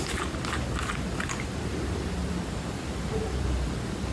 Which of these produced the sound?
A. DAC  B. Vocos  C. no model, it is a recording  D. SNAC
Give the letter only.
C